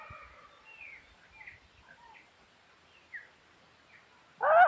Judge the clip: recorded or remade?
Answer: recorded